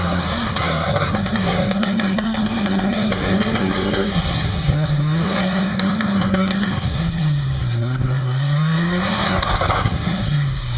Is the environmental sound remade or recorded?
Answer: remade